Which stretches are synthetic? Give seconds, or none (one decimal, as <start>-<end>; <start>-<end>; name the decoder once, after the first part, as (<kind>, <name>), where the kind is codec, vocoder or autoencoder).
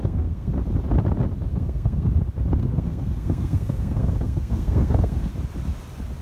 0.0-0.5 (codec, SNAC); 1.5-2.1; 2.6-5.3